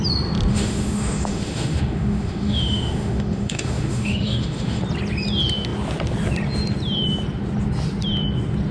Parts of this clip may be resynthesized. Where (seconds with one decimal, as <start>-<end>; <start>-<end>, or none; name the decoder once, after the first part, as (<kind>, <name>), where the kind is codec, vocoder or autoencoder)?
0.5-4.8 (autoencoder, DAC-VAE)